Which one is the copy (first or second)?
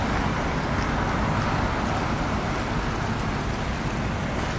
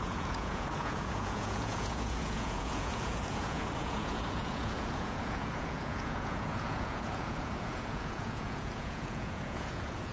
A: second